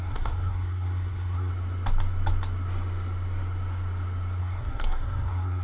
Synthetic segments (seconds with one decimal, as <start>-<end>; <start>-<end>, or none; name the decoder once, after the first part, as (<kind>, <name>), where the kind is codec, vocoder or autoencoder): 0.0-1.5 (codec, SNAC); 4.4-5.6